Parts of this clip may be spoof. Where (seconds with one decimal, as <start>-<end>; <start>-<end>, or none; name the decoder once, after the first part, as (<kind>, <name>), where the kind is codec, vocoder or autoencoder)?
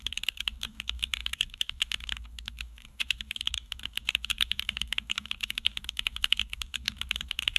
0.0-7.6 (codec, DAC)